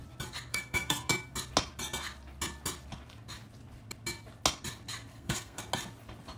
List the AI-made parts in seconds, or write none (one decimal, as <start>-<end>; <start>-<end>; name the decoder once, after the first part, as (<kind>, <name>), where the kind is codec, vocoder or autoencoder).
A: 0.5-1.1 (codec, SNAC); 5.1-5.6

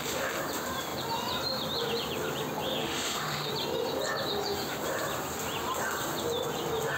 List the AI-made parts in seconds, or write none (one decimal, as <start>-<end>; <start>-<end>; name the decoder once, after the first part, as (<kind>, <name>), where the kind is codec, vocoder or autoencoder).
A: 2.8-3.5 (autoencoder, DAC-VAE)

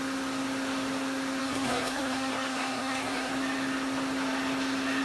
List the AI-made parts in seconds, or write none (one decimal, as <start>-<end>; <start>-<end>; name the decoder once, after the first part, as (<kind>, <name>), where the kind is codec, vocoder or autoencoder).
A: 1.4-3.3 (codec, SNAC)

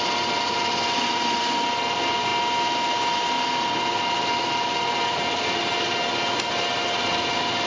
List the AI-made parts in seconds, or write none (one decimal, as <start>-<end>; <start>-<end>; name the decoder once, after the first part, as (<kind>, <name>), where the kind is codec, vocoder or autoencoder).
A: none